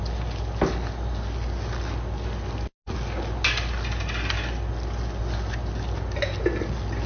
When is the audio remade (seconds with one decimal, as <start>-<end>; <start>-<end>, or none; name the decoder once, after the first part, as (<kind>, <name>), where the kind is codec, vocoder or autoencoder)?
none